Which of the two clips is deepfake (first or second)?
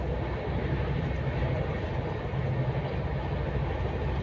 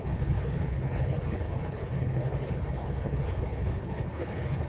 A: second